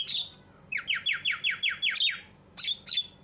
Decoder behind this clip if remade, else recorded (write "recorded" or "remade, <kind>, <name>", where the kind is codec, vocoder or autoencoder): recorded